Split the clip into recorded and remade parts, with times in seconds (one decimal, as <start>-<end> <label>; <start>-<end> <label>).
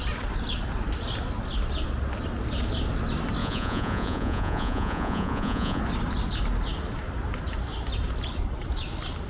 0.0-3.4 recorded; 3.4-5.8 remade; 5.8-9.3 recorded